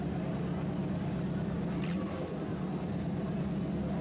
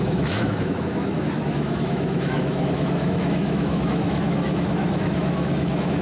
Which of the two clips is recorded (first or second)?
first